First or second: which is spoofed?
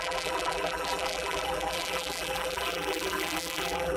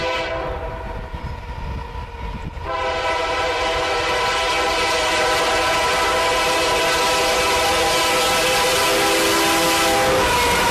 first